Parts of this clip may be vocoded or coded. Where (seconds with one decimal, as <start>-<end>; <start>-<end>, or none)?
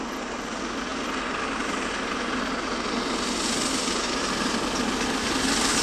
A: none